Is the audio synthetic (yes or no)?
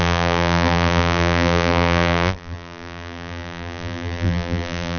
yes